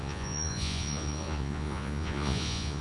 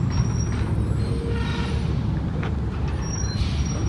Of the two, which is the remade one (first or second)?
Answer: first